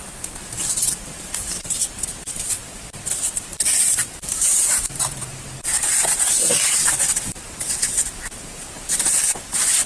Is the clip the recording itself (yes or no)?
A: no